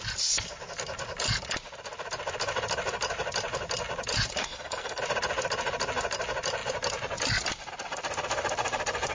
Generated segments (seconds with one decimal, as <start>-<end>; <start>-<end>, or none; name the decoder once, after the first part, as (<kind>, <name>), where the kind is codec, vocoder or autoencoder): 4.4-5.0 (codec, SNAC)